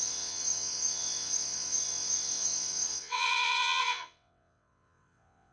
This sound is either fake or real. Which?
fake